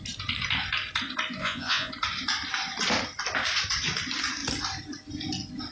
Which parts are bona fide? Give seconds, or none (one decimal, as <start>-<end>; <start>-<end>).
0.0-1.4; 1.9-5.7